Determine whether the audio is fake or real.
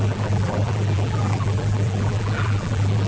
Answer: fake